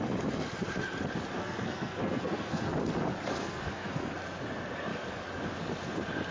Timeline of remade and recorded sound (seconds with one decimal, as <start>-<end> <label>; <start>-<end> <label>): 0.0-1.4 recorded; 1.4-2.7 remade; 2.7-3.3 recorded; 3.3-4.1 remade; 4.1-6.3 recorded